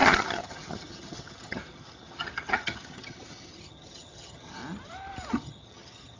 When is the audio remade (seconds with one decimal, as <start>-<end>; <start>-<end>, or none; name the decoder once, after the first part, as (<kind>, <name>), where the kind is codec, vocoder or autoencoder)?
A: 0.0-4.6 (vocoder, HiFi-GAN); 5.3-6.2